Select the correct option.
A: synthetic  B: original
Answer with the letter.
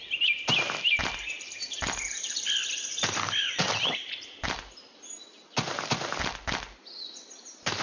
B